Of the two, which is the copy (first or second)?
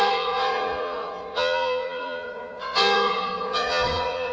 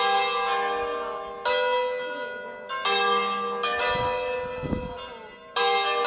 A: first